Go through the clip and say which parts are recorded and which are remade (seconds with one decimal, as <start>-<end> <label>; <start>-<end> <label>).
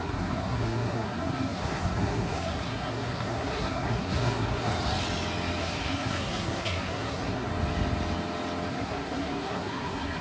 0.0-4.7 remade; 4.7-5.6 recorded; 5.6-7.5 remade; 7.5-8.7 recorded; 8.7-10.2 remade